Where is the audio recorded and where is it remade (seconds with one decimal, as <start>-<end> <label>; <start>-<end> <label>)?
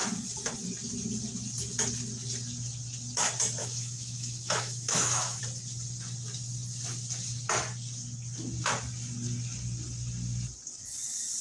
0.0-3.6 recorded; 3.6-5.4 remade; 5.4-11.4 recorded